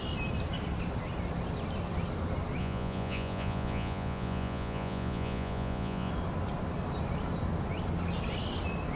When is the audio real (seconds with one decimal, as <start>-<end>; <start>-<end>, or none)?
0.0-2.6; 6.1-9.0